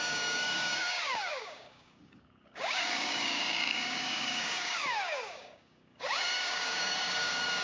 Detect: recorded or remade remade